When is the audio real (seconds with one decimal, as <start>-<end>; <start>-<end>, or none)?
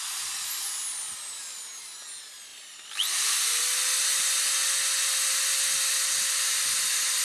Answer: 0.0-7.2